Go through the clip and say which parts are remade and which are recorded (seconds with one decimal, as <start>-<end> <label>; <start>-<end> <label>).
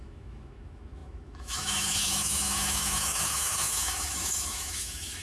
0.0-5.2 remade